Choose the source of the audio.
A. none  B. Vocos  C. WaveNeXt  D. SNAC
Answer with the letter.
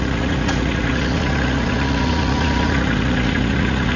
B